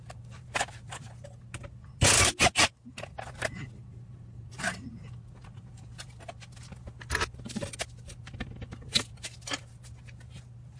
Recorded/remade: recorded